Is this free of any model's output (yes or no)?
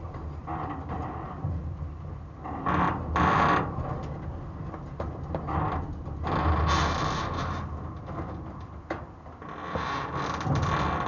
yes